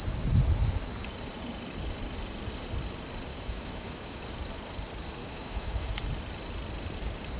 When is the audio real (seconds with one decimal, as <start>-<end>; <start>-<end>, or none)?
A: 0.0-3.3; 4.2-5.2; 6.0-7.4